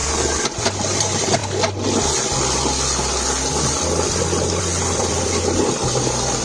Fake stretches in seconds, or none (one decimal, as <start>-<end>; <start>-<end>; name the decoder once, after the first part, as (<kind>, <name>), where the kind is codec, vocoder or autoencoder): 0.6-1.4 (vocoder, BigVGAN v2); 4.6-6.4